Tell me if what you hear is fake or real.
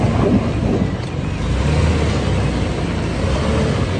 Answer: real